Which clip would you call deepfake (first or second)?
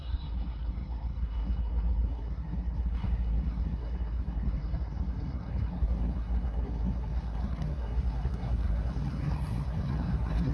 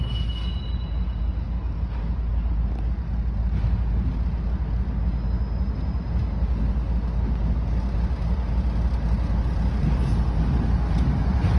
first